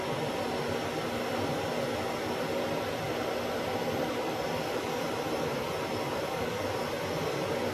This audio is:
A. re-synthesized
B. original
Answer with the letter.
B